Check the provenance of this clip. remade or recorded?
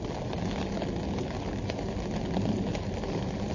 recorded